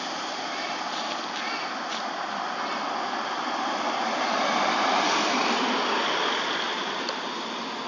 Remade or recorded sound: remade